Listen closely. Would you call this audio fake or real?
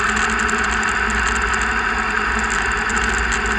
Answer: real